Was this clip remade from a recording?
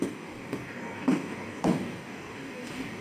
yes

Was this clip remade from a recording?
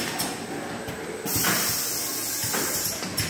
no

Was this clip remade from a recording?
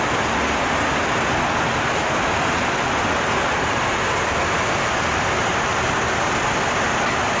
no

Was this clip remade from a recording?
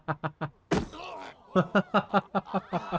no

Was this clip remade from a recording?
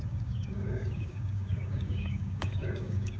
yes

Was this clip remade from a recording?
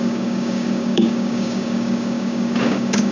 yes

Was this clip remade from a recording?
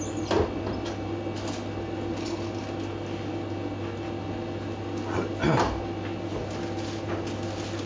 no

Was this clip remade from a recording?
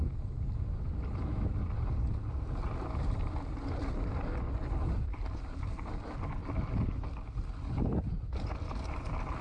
no